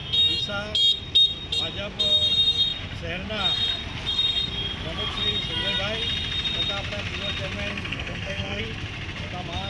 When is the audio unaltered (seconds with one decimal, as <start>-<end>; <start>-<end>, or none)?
0.0-7.7; 8.6-9.7